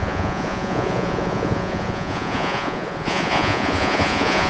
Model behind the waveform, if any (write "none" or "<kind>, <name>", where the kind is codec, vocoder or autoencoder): vocoder, Vocos